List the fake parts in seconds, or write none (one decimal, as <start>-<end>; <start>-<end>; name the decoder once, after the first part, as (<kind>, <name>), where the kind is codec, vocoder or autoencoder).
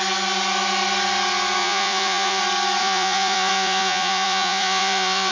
1.6-2.4 (vocoder, Vocos); 2.8-5.3